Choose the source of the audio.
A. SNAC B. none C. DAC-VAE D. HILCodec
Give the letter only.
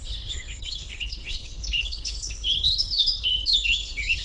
D